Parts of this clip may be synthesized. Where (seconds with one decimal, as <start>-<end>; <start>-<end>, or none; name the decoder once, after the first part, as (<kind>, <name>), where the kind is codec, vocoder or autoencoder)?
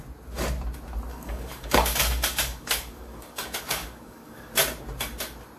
1.1-4.5 (codec, DAC)